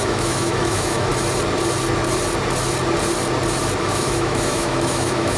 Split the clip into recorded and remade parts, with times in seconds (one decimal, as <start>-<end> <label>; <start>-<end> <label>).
0.0-1.1 remade; 1.1-3.8 recorded; 3.8-5.4 remade